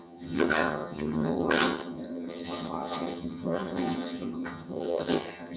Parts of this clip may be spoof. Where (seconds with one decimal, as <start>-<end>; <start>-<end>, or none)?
0.0-5.6